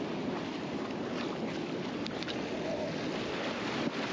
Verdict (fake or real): real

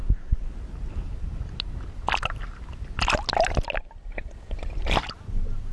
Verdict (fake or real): real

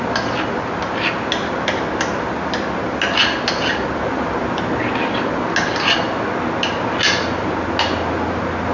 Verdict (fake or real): real